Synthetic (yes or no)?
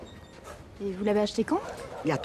no